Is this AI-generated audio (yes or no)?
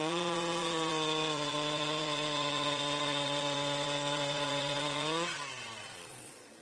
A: yes